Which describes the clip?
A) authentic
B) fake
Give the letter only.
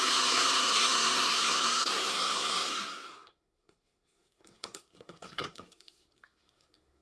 B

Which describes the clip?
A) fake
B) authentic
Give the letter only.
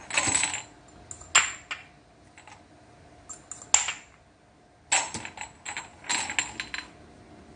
B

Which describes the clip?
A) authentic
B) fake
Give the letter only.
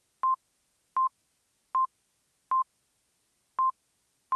A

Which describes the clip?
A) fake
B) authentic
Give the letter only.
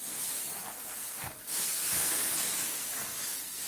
A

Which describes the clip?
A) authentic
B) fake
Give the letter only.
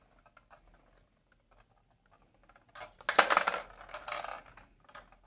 A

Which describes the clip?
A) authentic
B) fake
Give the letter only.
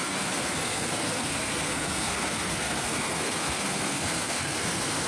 B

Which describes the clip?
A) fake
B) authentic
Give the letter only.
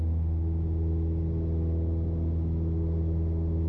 B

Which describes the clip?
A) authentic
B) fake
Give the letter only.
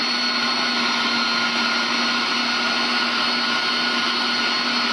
A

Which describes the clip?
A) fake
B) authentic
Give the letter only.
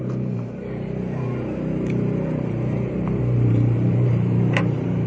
A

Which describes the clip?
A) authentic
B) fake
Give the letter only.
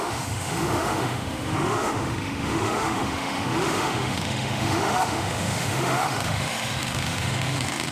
B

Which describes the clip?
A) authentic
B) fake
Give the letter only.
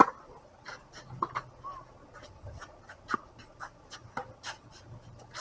A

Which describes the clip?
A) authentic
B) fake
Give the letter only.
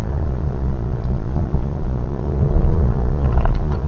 B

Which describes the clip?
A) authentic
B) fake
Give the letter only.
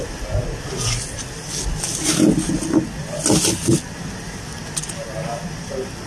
A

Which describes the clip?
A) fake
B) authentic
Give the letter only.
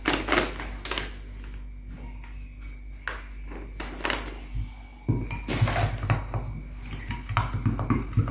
B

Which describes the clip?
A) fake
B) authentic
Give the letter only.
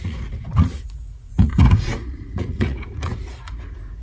A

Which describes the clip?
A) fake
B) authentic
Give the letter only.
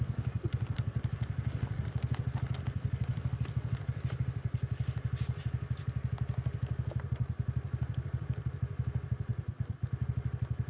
B